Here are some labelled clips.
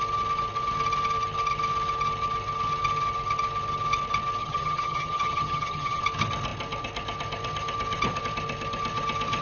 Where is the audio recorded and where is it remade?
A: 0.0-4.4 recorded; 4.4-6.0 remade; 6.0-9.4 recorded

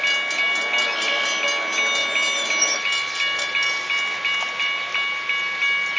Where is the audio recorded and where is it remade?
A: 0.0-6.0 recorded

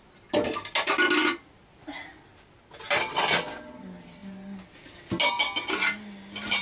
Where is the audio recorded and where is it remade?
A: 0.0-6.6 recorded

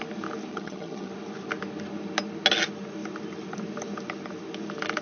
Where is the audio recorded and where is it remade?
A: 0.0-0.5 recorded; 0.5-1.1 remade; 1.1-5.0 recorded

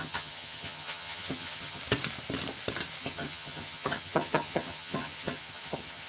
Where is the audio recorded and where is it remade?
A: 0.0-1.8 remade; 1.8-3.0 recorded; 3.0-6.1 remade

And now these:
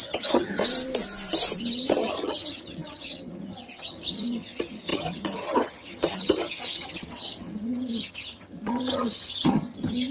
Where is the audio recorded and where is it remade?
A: 0.0-0.6 remade; 0.6-1.6 recorded; 1.6-10.1 remade

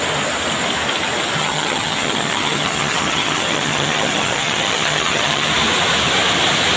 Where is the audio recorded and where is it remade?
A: 0.0-1.4 recorded; 1.4-5.5 remade; 5.5-6.8 recorded